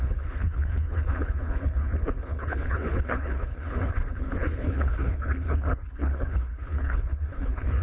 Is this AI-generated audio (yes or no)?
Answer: yes